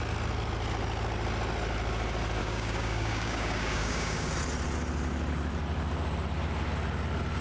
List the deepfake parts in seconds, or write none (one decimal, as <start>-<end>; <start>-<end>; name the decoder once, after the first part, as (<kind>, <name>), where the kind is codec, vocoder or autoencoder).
2.4-4.3 (codec, DAC)